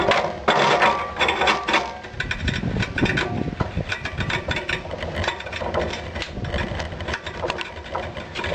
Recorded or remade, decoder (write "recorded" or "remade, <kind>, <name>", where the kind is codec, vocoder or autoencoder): recorded